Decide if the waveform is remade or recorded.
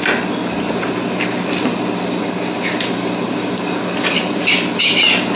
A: recorded